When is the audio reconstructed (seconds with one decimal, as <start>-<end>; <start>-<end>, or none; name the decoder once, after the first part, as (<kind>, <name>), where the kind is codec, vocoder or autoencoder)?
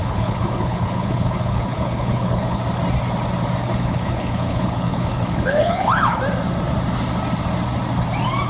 0.0-2.6 (codec, HILCodec); 3.6-6.2